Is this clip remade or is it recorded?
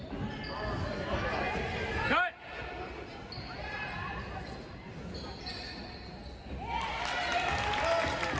recorded